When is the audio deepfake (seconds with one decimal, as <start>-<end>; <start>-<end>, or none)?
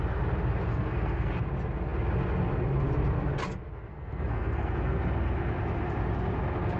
0.7-1.3; 3.9-4.7